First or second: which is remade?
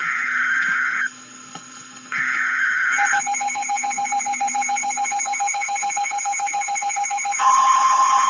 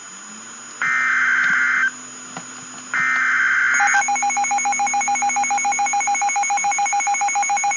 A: first